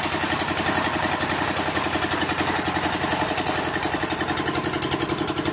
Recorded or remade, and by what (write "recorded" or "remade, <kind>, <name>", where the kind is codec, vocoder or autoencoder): recorded